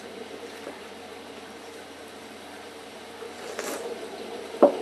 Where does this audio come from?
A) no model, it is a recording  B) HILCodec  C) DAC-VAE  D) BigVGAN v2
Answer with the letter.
D